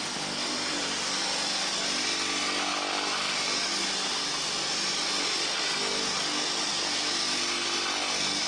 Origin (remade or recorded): recorded